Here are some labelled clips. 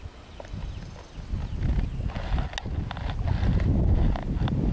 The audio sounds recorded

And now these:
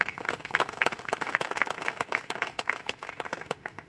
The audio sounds remade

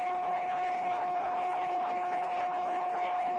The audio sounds remade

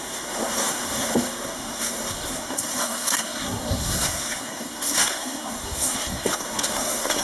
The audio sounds remade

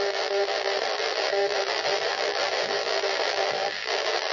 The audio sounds remade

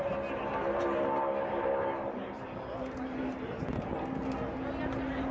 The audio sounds recorded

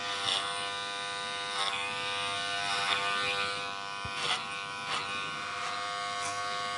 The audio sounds remade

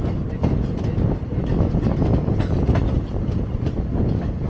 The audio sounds recorded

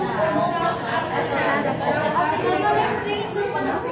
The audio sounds recorded